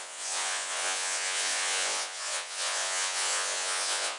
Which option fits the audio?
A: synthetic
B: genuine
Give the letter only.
A